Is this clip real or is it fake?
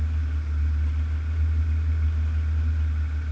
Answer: real